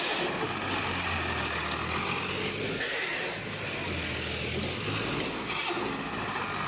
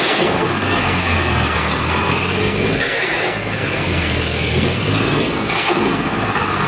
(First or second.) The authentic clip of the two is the first